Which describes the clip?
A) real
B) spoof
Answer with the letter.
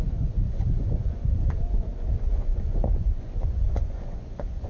B